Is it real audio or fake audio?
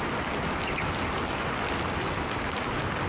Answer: real